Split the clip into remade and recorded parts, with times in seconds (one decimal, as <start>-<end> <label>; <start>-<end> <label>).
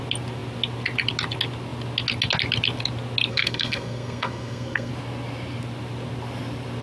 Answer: 0.0-3.3 recorded; 3.3-4.9 remade; 4.9-6.8 recorded